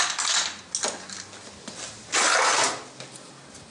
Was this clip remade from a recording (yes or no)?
no